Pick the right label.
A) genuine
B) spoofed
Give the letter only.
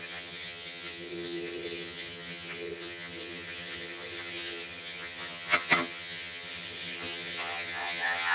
B